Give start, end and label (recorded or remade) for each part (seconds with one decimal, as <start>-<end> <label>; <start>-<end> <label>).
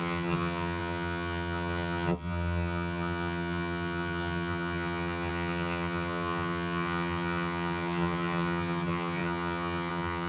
0.0-10.3 remade